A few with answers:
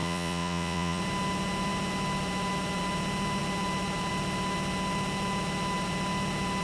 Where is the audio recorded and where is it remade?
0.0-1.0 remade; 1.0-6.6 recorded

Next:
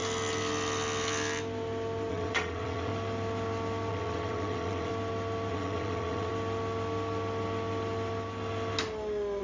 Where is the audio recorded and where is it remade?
0.0-2.1 recorded; 2.1-2.9 remade; 2.9-3.9 recorded; 3.9-4.9 remade; 4.9-5.5 recorded; 5.5-6.3 remade; 6.3-9.4 recorded

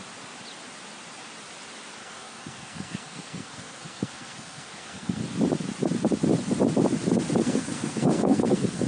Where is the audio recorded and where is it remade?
0.0-2.0 recorded; 2.0-5.2 remade; 5.2-7.4 recorded; 7.4-8.9 remade

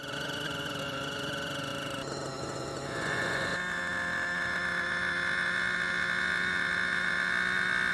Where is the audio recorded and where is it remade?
0.0-1.7 remade; 1.7-2.3 recorded; 2.3-3.5 remade; 3.5-7.9 recorded

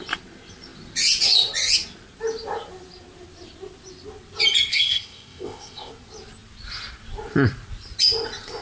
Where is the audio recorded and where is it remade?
0.0-4.7 recorded; 4.7-5.9 remade; 5.9-8.6 recorded

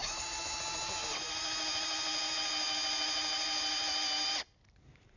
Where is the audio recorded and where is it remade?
0.0-0.6 remade; 0.6-5.2 recorded